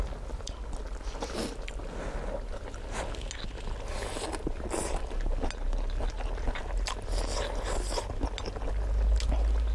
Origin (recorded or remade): recorded